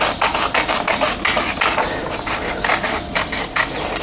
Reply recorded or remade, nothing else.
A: recorded